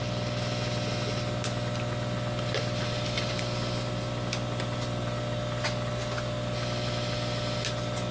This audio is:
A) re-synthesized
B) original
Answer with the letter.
B